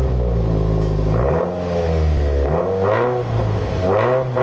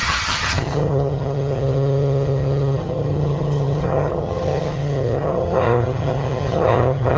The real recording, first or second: first